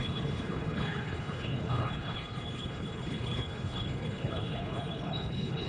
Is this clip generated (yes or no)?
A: yes